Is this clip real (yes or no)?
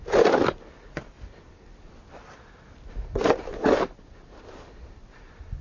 yes